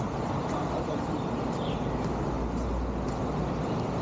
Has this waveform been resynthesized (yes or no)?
no